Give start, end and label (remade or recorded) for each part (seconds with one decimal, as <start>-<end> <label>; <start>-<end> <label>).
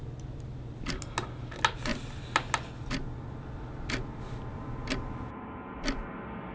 0.0-6.5 recorded